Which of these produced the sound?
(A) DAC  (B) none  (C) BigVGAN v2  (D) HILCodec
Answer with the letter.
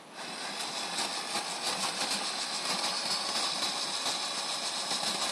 B